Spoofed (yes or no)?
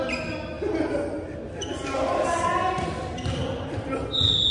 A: no